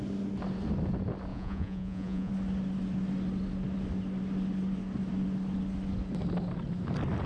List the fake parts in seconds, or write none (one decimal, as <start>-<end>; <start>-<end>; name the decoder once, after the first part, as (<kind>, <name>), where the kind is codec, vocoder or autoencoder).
1.3-2.3 (vocoder, Vocos)